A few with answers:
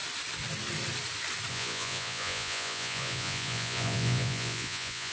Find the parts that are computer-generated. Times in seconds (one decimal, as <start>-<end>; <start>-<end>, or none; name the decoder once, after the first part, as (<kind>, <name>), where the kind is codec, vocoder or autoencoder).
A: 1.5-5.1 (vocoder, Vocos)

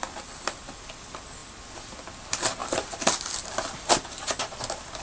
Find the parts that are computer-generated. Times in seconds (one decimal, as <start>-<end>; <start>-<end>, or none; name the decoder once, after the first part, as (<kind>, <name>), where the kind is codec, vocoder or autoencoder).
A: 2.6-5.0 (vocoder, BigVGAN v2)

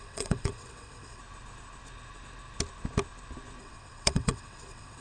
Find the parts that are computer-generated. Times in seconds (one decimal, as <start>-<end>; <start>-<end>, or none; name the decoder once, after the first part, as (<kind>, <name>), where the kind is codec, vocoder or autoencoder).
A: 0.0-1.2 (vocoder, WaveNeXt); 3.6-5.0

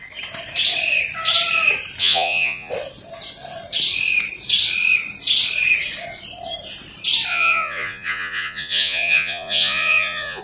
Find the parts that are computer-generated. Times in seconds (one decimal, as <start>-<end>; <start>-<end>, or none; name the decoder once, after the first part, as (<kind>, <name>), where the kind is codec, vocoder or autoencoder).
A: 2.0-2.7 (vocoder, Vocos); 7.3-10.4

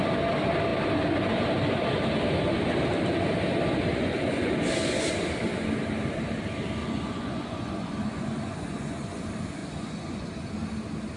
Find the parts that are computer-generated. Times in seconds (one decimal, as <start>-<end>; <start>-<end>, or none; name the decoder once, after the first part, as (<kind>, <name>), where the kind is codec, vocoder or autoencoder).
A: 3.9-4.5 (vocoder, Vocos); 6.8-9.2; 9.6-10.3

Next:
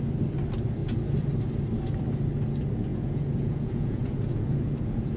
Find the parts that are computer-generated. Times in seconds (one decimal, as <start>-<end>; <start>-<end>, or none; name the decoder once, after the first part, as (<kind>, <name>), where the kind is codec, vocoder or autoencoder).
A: 2.9-5.2 (vocoder, Vocos)